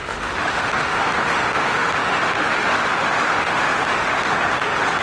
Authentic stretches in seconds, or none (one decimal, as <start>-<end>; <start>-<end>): none